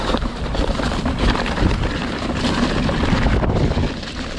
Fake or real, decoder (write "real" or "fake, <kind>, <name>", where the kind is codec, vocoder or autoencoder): fake, vocoder, BigVGAN v2